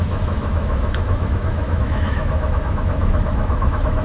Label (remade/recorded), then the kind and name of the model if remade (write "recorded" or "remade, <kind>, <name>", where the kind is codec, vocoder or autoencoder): remade, autoencoder, DAC-VAE